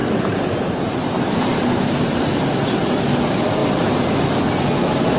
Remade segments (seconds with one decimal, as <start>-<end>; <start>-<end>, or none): 0.0-2.5; 3.6-4.1